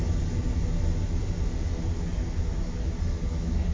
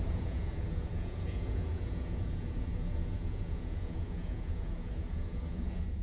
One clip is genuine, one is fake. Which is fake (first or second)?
second